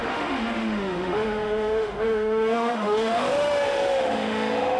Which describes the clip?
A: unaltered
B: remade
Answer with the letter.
B